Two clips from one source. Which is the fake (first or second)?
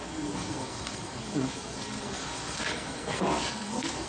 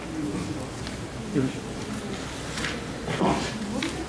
first